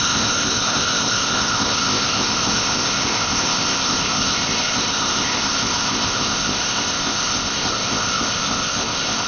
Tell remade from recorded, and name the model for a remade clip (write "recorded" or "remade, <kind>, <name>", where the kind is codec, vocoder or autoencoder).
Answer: remade, codec, ZipCodec